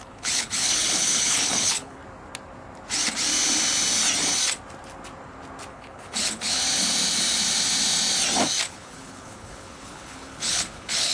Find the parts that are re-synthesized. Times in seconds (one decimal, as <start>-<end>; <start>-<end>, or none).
0.0-2.0; 5.7-6.6; 8.7-11.1